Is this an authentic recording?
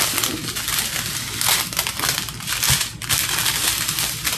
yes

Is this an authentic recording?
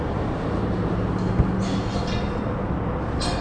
yes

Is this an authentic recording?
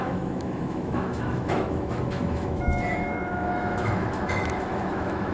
no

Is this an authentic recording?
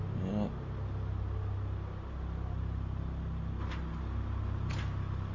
yes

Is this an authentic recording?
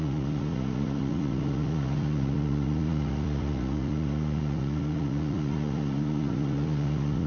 no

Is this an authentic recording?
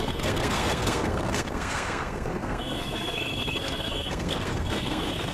no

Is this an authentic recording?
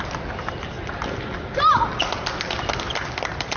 yes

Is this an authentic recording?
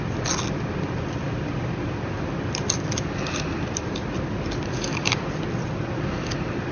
yes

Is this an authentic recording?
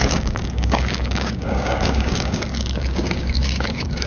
no